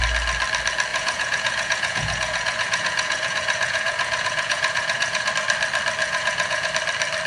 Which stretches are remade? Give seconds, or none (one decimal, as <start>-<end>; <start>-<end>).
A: 0.9-5.3; 6.0-6.7